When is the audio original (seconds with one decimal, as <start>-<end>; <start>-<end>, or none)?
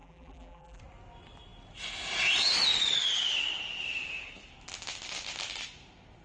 0.8-6.2